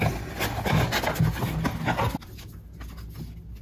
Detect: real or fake real